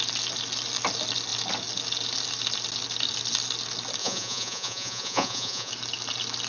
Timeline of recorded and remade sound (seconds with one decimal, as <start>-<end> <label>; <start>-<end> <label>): 0.0-4.0 recorded; 4.0-5.7 remade; 5.7-6.5 recorded